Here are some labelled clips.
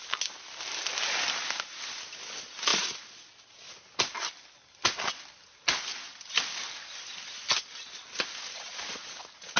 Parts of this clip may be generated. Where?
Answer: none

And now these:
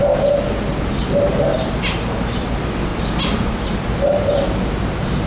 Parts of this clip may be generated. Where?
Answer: none

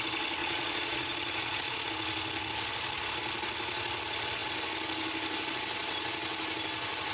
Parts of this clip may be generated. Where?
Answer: 0.4-1.9 (vocoder, Vocos)

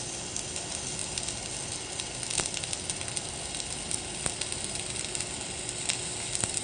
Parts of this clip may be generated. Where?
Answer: none

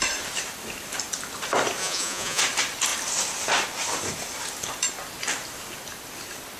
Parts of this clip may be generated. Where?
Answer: 1.8-2.4 (vocoder, Vocos)

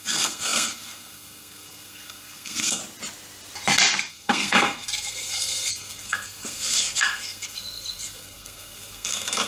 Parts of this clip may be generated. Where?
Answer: 0.0-2.8 (codec, SNAC); 4.1-9.5

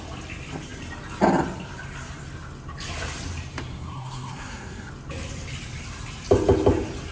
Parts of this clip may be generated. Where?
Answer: 3.7-4.9 (codec, SNAC)